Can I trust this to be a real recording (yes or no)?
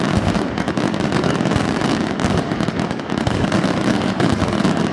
no